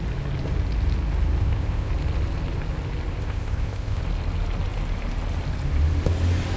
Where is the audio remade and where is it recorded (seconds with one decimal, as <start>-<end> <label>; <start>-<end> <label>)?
0.0-1.4 recorded; 1.4-1.9 remade; 1.9-3.2 recorded; 3.2-4.0 remade; 4.0-6.6 recorded